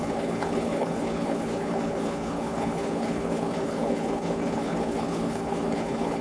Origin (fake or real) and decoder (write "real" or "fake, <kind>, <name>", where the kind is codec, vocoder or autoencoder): fake, codec, HILCodec